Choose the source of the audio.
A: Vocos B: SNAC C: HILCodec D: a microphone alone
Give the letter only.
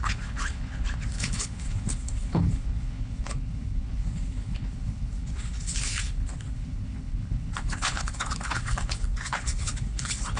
C